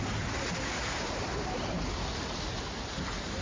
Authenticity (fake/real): real